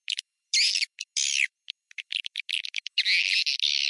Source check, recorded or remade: recorded